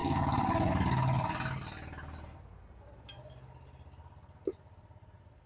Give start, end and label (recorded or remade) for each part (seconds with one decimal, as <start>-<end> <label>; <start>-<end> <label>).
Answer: 0.0-0.7 remade; 0.7-5.5 recorded